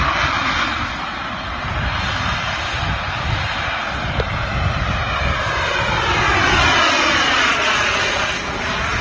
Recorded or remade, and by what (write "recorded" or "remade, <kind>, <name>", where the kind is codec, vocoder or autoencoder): recorded